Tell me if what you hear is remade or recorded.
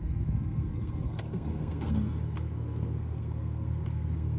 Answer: remade